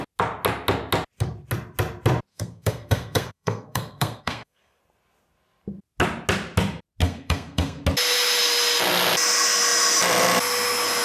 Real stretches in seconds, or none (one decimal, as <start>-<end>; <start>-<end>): 0.0-2.3; 4.8-7.0; 7.8-11.0

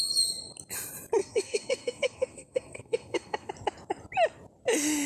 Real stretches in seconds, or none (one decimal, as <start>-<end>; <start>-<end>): 0.0-1.2; 3.5-5.1

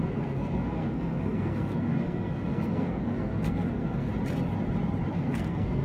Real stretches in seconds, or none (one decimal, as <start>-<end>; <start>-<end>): 4.1-5.1

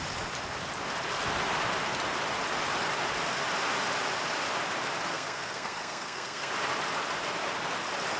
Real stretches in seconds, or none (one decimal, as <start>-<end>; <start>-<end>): 0.0-5.1; 6.5-8.2